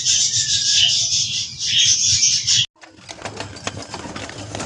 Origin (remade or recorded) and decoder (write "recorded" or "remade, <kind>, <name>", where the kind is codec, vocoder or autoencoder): recorded